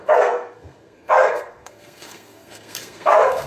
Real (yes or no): no